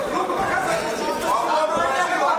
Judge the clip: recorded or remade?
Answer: recorded